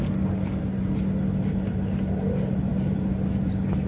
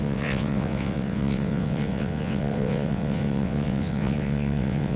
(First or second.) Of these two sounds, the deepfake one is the second